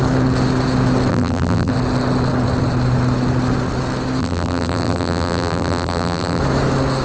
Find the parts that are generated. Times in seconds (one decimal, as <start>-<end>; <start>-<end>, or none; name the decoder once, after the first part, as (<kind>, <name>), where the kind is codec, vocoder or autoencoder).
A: 1.1-1.7 (vocoder, BigVGAN v2); 4.2-6.4